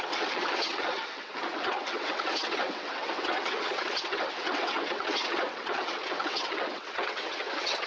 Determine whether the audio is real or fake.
fake